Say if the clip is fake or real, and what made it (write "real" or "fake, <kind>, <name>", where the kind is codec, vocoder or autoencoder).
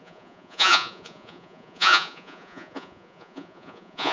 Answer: fake, vocoder, Vocos